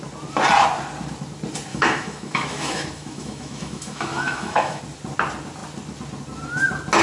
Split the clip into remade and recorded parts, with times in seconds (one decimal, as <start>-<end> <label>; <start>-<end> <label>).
0.0-1.7 recorded; 1.7-4.8 remade; 4.8-7.0 recorded